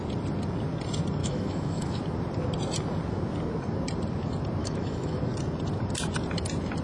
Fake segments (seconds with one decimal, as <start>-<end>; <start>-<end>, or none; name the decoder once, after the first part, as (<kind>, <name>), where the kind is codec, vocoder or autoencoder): 1.2-2.0 (autoencoder, DAC-VAE); 4.6-5.2